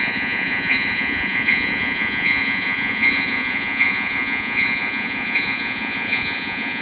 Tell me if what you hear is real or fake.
fake